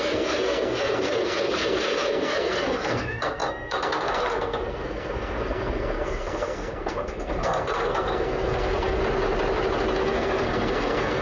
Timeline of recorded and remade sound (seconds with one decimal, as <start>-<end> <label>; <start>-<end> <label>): 0.0-9.0 remade; 9.0-10.0 recorded; 10.0-11.2 remade